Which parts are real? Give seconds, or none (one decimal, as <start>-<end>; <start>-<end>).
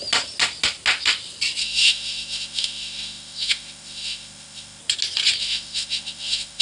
0.0-1.6; 4.8-5.4